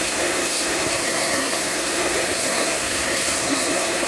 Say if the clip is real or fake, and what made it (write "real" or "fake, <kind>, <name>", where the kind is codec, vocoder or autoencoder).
fake, codec, SNAC